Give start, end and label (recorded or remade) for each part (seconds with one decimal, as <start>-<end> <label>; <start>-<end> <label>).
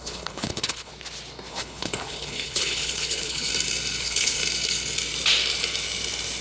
0.0-0.9 remade; 0.9-1.5 recorded; 1.5-3.5 remade; 3.5-4.0 recorded; 4.0-4.4 remade; 4.4-6.4 recorded